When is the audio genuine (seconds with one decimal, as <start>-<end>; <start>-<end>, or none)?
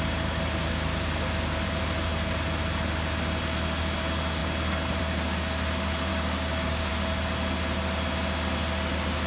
0.0-6.1; 6.9-9.3